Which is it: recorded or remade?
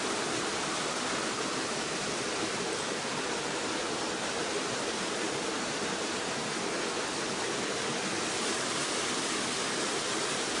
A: recorded